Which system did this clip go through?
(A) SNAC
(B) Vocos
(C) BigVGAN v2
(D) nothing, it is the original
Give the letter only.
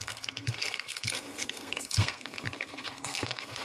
A